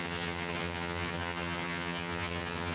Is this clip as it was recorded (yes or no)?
no